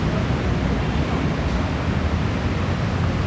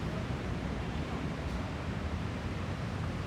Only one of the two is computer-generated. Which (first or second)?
second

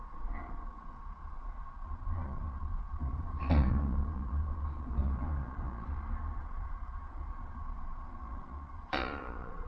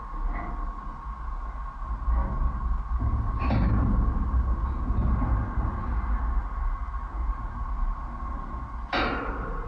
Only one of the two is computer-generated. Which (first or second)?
first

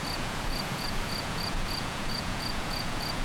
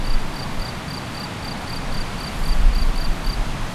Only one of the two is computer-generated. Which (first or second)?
first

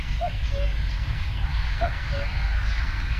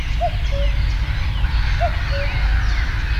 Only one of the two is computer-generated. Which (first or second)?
first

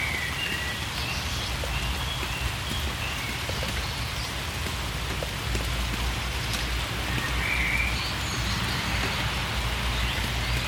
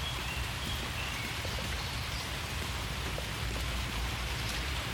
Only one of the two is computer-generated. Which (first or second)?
second